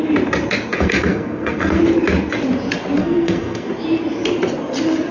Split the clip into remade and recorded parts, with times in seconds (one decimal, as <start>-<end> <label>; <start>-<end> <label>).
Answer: 0.0-0.7 recorded; 0.7-1.8 remade; 1.8-3.0 recorded; 3.0-3.7 remade; 3.7-5.1 recorded